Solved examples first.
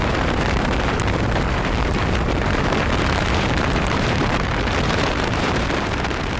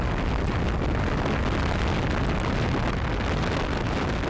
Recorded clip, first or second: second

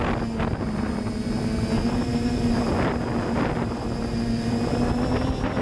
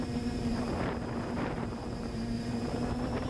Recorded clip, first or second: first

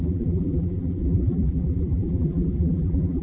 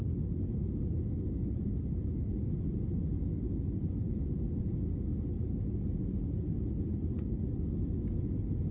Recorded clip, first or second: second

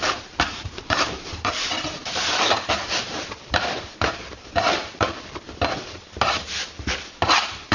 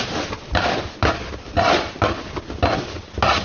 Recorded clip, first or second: second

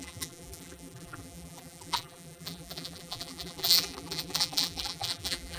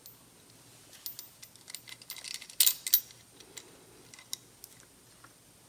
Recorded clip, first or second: second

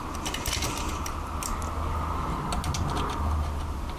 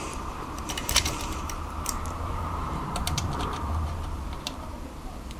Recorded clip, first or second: first